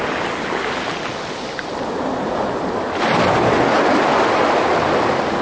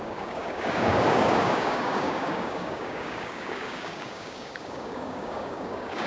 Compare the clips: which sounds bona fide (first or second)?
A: first